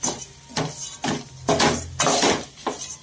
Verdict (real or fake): real